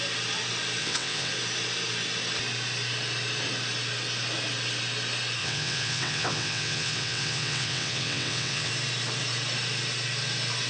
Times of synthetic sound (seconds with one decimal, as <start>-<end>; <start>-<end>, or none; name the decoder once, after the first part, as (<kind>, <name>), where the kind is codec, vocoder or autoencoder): 0.8-1.3 (vocoder, WaveNeXt); 5.4-8.7